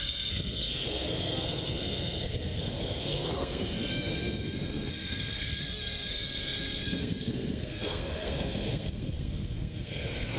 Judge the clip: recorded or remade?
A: remade